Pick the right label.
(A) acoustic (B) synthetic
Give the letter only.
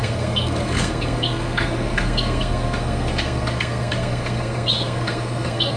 B